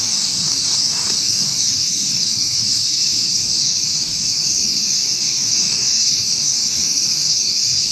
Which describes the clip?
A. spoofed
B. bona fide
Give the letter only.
A